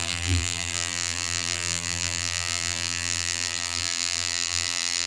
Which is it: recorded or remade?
remade